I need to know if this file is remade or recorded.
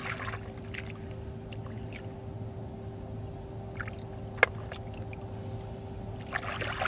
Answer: recorded